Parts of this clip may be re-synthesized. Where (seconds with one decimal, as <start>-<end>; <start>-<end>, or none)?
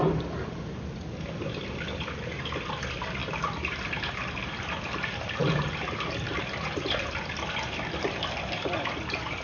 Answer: none